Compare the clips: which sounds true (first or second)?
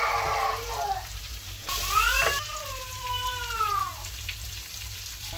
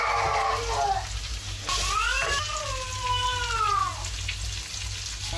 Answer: second